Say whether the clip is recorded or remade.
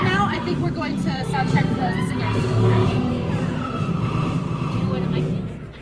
remade